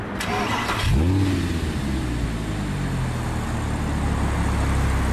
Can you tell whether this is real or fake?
real